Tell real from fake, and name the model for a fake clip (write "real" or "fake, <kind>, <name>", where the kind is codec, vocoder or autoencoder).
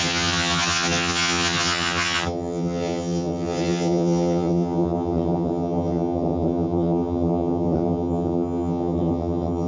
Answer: fake, vocoder, HiFi-GAN